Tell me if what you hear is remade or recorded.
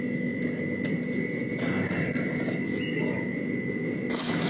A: recorded